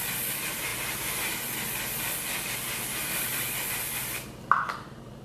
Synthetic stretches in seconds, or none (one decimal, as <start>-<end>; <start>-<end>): none